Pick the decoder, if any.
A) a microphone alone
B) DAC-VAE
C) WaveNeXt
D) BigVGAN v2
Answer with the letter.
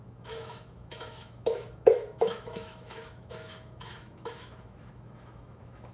B